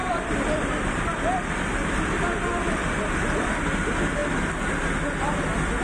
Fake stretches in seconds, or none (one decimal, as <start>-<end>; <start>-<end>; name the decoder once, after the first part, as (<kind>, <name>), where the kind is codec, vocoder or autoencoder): 0.0-3.5 (vocoder, BigVGAN v2)